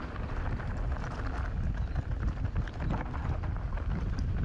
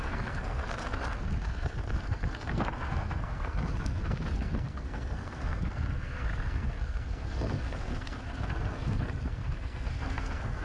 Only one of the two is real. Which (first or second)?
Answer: first